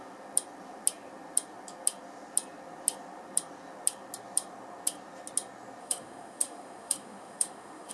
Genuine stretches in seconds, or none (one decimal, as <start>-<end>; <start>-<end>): 0.0-5.8